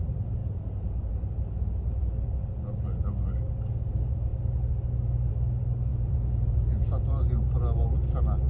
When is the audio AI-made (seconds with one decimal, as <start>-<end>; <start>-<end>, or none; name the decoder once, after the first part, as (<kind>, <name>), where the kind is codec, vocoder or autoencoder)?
0.4-1.1 (vocoder, Vocos); 5.9-7.0